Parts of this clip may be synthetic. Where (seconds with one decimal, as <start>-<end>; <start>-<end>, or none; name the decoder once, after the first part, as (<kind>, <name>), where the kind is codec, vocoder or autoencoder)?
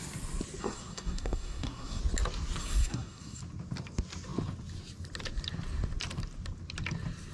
0.6-2.0 (codec, SNAC); 2.6-3.4